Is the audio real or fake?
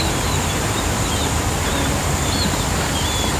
real